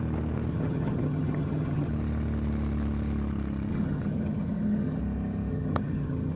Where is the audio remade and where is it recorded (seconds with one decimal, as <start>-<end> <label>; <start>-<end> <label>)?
0.0-0.5 recorded; 0.5-1.9 remade; 1.9-3.7 recorded; 3.7-5.0 remade; 5.0-5.5 recorded; 5.5-6.4 remade